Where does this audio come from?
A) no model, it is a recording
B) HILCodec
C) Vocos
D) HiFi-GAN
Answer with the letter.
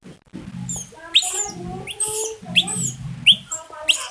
A